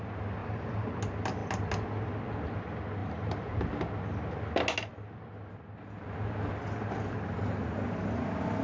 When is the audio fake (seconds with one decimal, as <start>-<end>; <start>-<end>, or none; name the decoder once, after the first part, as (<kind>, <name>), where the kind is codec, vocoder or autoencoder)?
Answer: 0.4-0.9 (vocoder, BigVGAN v2); 3.0-3.9